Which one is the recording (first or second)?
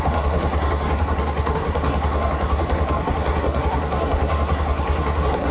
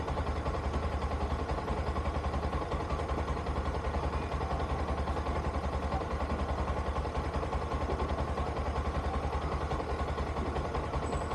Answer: second